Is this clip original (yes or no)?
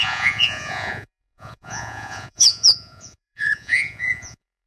no